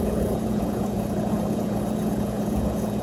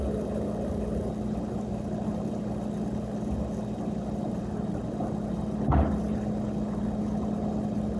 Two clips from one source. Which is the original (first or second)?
second